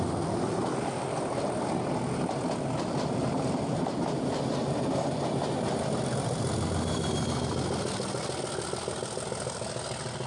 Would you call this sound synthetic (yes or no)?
no